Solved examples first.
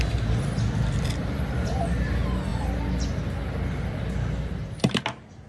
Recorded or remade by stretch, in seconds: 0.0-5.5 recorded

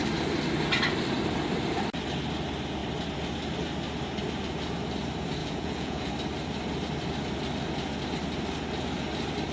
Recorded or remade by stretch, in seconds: 0.0-5.4 recorded; 5.4-6.1 remade; 6.1-9.5 recorded

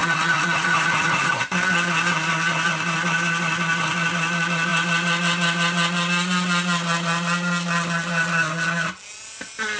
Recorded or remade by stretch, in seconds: 0.0-1.3 remade; 1.3-9.8 recorded

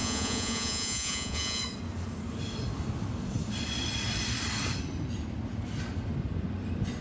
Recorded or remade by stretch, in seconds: 0.0-1.6 remade; 1.6-7.0 recorded

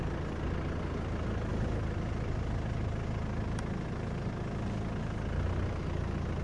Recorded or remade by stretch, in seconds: 0.0-6.4 recorded

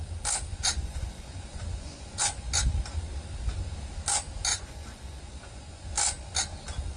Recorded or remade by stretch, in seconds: 0.0-0.5 recorded; 0.5-2.5 remade; 2.5-4.5 recorded; 4.5-5.9 remade; 5.9-7.0 recorded